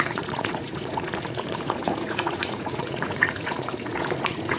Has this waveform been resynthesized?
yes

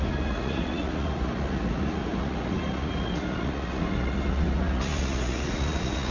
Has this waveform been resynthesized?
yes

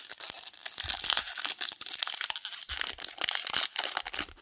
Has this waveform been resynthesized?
no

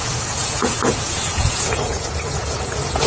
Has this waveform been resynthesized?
yes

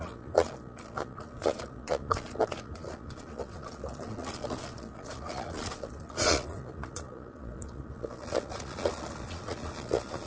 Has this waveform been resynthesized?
yes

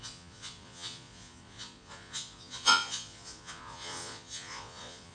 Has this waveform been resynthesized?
yes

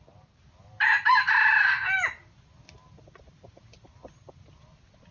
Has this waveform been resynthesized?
no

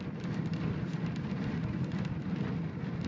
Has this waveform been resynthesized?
no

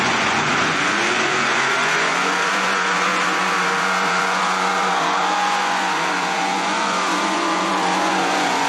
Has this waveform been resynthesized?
yes